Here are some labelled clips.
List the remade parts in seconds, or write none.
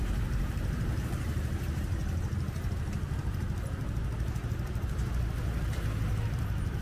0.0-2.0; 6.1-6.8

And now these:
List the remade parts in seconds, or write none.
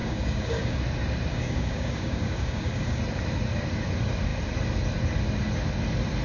0.0-0.8; 1.3-3.0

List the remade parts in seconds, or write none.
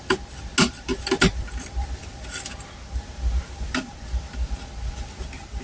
none